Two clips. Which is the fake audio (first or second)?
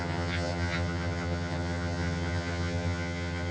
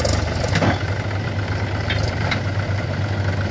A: first